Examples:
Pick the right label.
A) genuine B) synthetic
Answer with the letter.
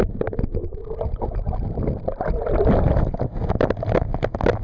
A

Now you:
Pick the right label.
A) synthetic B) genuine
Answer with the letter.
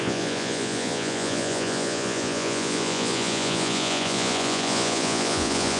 A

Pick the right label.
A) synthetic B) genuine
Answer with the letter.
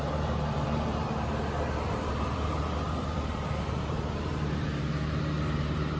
A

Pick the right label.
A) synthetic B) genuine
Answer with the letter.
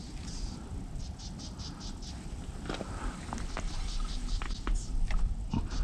B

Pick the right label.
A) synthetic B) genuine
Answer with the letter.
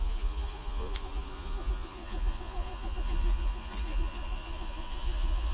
A